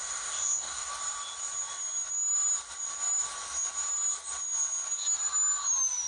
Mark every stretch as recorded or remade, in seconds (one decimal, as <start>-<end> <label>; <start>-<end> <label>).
0.0-0.9 remade; 0.9-6.1 recorded

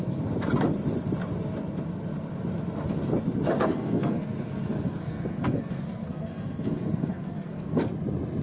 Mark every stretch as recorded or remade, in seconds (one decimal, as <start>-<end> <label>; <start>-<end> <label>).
0.0-3.6 recorded; 3.6-7.9 remade; 7.9-8.4 recorded

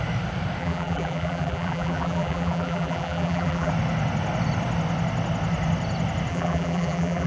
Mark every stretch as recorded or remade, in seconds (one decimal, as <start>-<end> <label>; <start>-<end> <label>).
0.0-0.6 recorded; 0.6-3.7 remade; 3.7-6.3 recorded; 6.3-7.3 remade